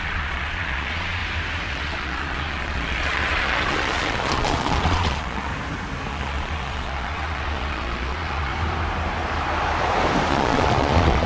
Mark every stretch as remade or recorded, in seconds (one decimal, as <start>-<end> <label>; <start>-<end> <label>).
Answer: 0.0-1.2 remade; 1.2-1.7 recorded; 1.7-5.5 remade; 5.5-6.1 recorded; 6.1-8.5 remade; 8.5-10.3 recorded; 10.3-11.3 remade